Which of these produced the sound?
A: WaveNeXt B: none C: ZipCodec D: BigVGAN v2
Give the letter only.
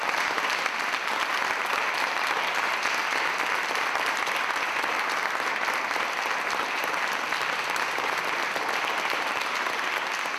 B